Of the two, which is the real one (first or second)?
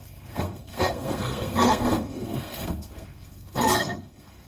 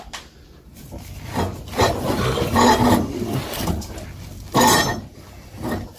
second